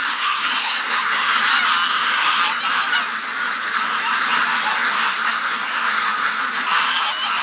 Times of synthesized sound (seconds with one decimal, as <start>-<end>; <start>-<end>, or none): 0.0-1.4; 1.9-2.4; 4.7-6.4